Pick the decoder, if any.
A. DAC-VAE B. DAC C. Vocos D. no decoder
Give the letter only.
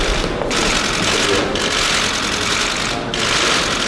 D